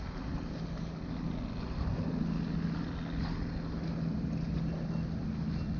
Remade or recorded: recorded